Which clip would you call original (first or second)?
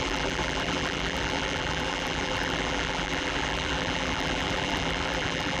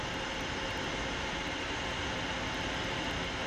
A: second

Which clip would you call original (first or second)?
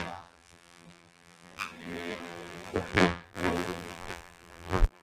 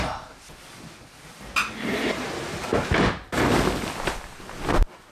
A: second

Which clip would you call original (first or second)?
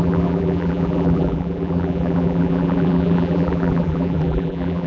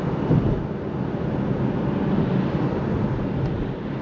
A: second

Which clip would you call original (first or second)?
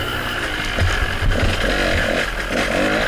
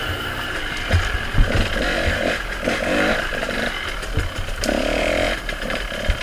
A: first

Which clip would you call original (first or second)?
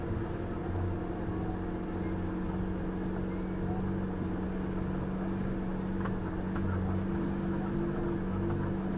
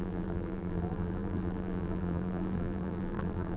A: first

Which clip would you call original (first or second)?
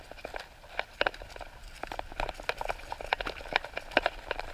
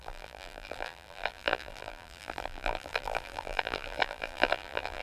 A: first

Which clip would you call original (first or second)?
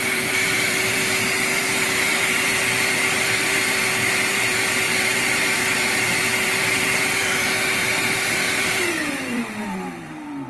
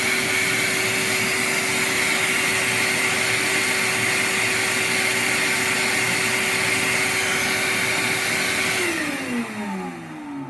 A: second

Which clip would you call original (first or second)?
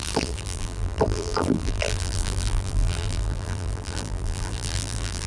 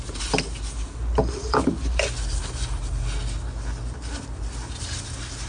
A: second